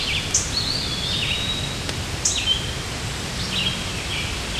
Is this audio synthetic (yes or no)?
no